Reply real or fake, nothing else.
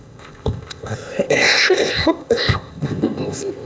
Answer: fake